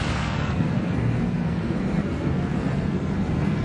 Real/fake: fake